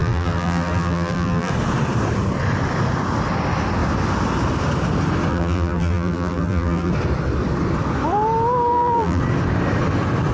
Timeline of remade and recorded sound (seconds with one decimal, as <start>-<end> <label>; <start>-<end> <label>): 0.0-1.5 remade; 1.5-5.3 recorded; 5.3-6.9 remade; 6.9-8.7 recorded; 8.7-9.2 remade; 9.2-10.3 recorded